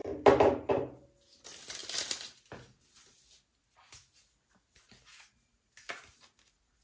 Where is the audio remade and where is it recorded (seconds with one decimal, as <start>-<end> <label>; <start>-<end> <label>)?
0.0-6.8 recorded